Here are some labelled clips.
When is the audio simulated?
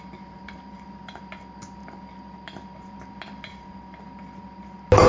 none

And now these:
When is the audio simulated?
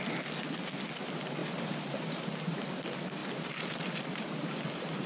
1.4-2.1 (vocoder, BigVGAN v2); 3.2-5.1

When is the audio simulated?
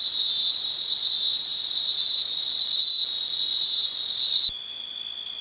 1.5-3.1 (vocoder, BigVGAN v2)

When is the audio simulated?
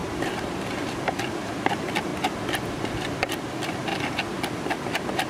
1.7-2.1 (vocoder, BigVGAN v2); 3.4-3.9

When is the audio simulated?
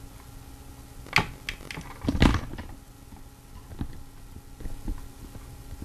none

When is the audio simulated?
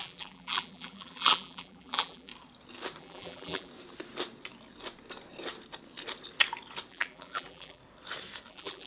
0.0-2.3 (vocoder, BigVGAN v2); 3.0-3.7; 6.9-7.8; 8.5-8.9